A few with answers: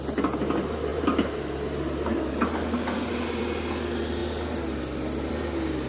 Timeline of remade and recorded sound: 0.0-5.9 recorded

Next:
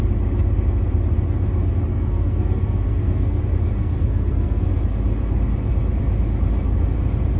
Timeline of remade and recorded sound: 0.0-1.9 recorded; 1.9-3.4 remade; 3.4-3.8 recorded; 3.8-4.7 remade; 4.7-7.4 recorded

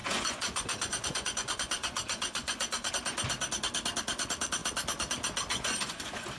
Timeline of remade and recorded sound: 0.0-2.9 remade; 2.9-5.5 recorded; 5.5-6.4 remade